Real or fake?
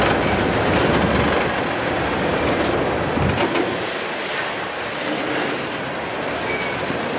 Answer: real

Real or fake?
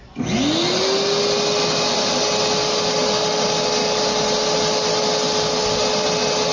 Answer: real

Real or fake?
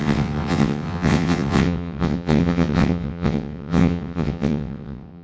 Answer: fake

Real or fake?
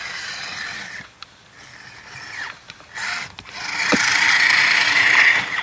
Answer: real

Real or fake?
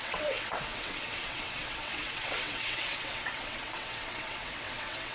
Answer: fake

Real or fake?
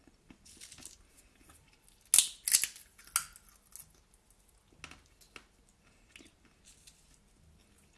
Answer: real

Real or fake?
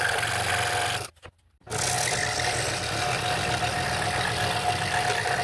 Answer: real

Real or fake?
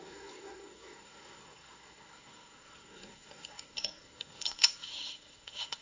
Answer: fake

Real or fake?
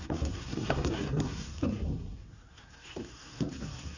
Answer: fake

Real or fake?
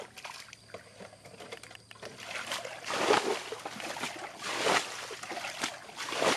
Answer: real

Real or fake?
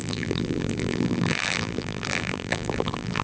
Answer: fake